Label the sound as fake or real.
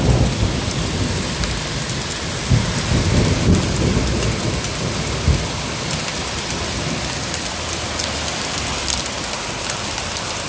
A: real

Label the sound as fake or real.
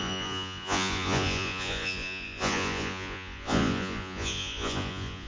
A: fake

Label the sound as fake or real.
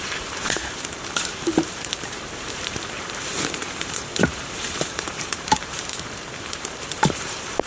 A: fake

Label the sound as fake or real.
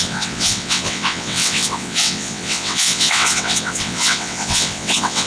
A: fake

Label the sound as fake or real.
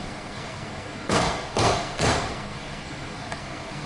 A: fake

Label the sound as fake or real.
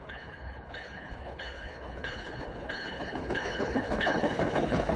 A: fake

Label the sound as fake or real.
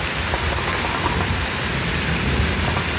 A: real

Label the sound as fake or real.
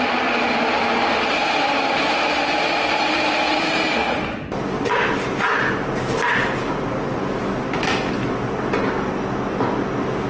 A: real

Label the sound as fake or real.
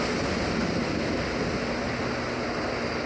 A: real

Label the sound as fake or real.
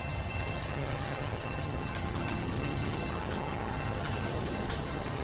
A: fake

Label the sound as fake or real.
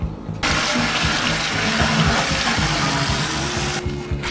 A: real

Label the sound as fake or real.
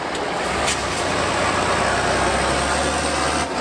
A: real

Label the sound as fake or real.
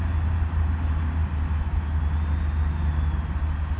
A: real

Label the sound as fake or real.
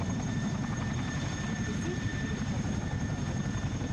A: fake